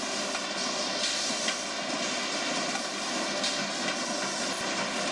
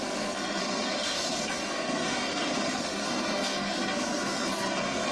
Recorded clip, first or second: first